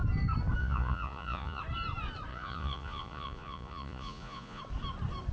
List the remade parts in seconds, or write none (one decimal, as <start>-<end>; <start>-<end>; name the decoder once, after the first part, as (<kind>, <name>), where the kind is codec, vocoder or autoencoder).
0.6-1.6 (vocoder, Vocos); 2.3-4.6